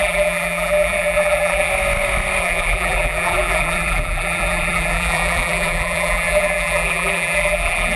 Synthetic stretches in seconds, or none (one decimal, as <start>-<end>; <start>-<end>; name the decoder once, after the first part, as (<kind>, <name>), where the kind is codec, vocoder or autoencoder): 0.0-1.7 (vocoder, BigVGAN v2); 2.4-8.0